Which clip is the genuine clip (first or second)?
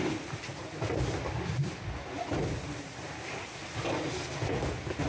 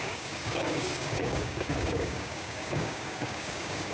first